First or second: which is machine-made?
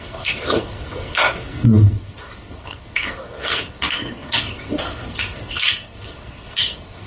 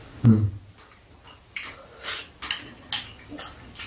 first